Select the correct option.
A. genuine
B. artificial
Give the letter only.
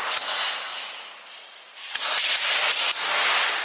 A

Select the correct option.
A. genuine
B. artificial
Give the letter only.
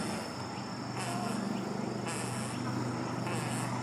A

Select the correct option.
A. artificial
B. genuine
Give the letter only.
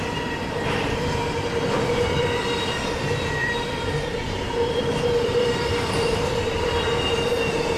A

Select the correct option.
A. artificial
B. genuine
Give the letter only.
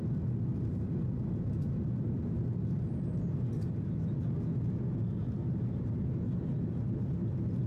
B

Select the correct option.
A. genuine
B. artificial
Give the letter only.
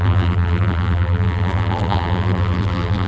B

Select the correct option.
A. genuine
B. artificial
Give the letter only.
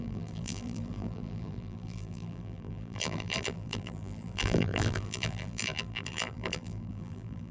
B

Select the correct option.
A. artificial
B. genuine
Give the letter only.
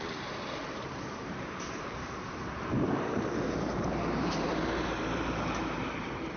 A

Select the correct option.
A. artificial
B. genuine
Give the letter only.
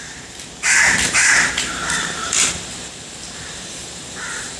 A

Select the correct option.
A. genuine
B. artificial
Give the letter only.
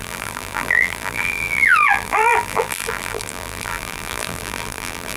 B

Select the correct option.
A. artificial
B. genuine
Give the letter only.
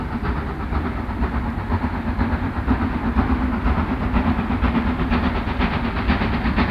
B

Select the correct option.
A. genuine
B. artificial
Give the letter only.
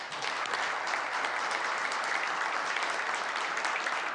A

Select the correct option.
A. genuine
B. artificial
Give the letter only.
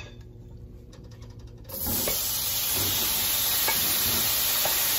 A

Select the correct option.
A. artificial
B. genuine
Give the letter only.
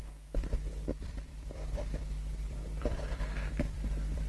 A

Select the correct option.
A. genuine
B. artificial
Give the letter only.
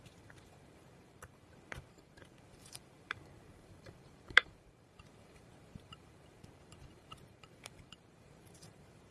B